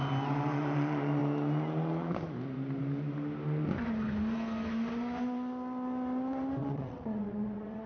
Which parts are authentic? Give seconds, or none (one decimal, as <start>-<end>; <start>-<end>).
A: 0.0-6.6